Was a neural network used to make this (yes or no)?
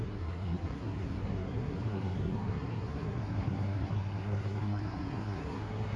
yes